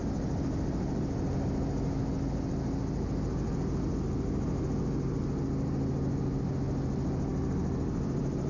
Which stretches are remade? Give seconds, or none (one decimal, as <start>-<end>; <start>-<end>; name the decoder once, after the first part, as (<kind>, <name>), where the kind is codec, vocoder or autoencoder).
none